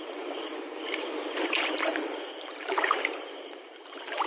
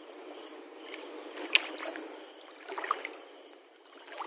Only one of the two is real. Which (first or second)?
second